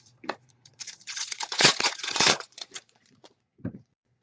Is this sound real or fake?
fake